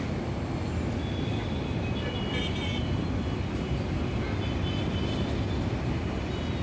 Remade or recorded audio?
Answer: recorded